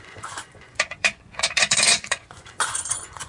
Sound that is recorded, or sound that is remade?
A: remade